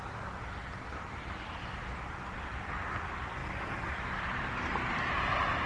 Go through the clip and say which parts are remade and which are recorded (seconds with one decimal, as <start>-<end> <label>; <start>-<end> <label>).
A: 0.0-0.9 recorded; 0.9-1.6 remade; 1.6-5.7 recorded